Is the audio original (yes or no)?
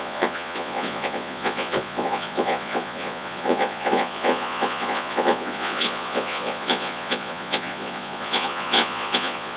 no